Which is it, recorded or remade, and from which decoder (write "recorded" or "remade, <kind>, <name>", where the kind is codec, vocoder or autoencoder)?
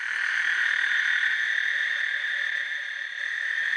recorded